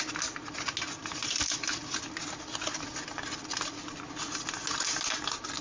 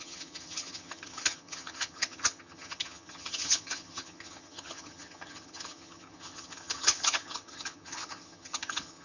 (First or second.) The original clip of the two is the first